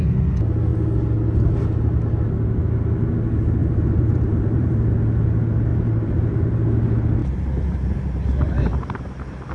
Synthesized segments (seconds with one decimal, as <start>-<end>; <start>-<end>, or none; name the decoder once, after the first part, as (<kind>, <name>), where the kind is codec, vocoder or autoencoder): 3.6-4.8 (vocoder, BigVGAN v2); 5.7-6.7; 7.2-9.0